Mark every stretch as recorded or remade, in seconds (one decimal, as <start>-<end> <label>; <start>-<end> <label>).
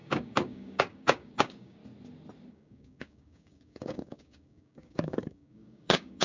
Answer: 0.0-1.8 remade; 1.8-2.5 recorded; 2.5-6.2 remade